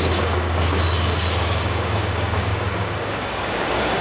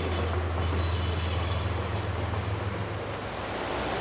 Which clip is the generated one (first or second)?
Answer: first